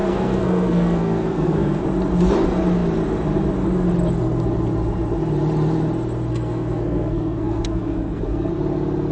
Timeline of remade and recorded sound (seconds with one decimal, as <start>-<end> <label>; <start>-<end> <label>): 0.0-1.8 remade; 1.8-6.3 recorded; 6.3-8.5 remade; 8.5-9.1 recorded